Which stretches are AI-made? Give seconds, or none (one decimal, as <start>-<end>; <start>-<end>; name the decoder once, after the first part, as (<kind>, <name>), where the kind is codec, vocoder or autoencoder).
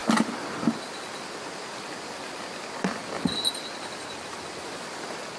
none